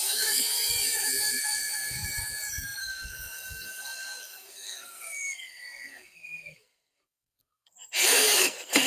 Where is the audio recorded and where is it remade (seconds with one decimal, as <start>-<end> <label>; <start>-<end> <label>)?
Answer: 0.0-8.9 remade